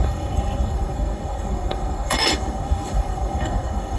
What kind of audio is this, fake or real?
fake